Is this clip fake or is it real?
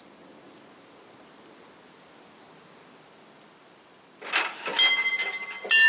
real